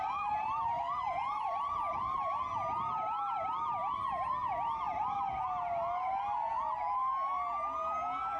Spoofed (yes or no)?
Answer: no